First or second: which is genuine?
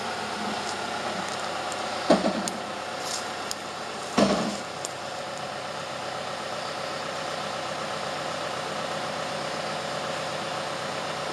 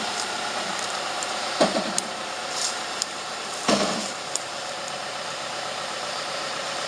first